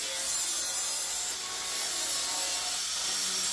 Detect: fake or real real